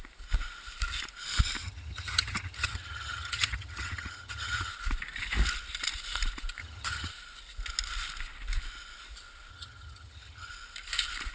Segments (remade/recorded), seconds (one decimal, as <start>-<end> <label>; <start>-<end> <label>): 0.0-1.6 recorded; 1.6-4.7 remade; 4.7-6.6 recorded; 6.6-7.1 remade; 7.1-9.5 recorded; 9.5-10.5 remade; 10.5-11.3 recorded